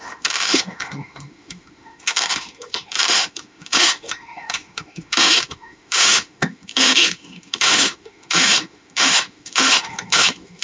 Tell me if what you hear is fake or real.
fake